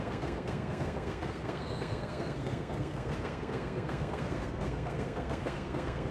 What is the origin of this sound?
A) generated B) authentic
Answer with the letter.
A